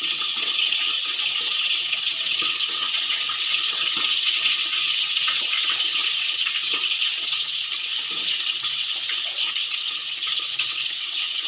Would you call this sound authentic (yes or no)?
no